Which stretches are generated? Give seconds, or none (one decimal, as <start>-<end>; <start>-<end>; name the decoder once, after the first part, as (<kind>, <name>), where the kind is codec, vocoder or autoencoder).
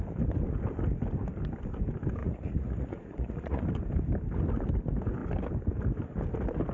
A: 2.2-3.6 (vocoder, Vocos)